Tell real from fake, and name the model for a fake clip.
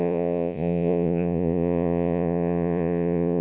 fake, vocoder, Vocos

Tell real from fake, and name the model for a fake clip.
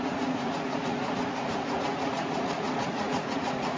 fake, vocoder, Vocos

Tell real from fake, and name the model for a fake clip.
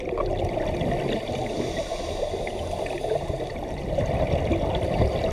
real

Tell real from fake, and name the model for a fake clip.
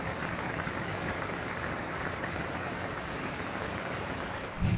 fake, codec, DAC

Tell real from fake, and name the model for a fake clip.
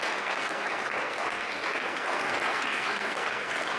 fake, codec, SNAC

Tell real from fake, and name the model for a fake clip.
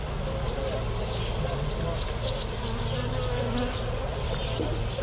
real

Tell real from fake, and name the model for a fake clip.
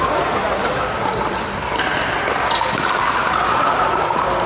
real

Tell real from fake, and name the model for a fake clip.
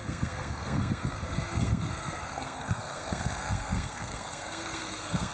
fake, codec, SNAC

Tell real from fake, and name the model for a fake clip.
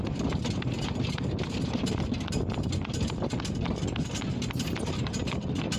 real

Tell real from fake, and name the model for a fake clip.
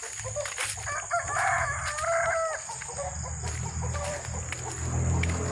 real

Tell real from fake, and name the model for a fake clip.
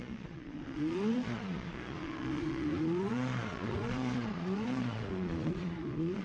fake, vocoder, Vocos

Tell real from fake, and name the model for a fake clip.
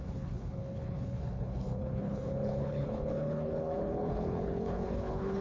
fake, codec, HILCodec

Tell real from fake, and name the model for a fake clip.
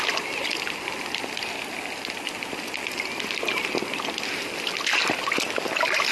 real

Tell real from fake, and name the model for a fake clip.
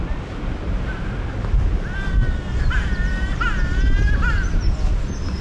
real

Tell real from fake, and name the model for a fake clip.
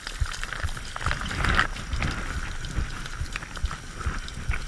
real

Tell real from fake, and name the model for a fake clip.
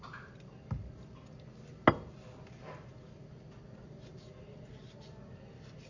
real